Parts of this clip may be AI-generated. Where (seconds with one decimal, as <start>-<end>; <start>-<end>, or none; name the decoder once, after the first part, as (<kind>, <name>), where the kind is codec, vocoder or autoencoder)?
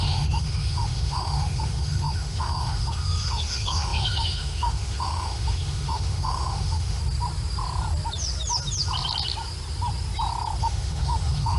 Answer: 0.0-7.0 (autoencoder, DAC-VAE); 10.6-11.6